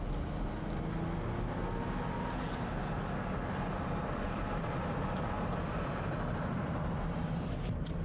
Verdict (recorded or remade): recorded